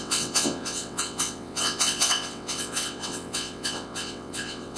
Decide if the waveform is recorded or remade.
remade